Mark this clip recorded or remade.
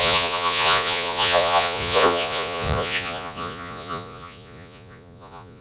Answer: remade